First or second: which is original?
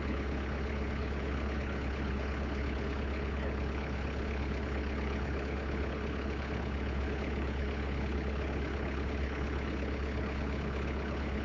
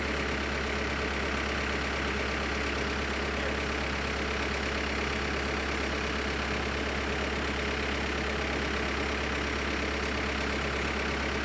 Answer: second